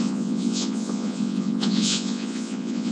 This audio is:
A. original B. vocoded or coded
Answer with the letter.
B